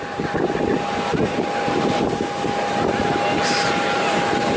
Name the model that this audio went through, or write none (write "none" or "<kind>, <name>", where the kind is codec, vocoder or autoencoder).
none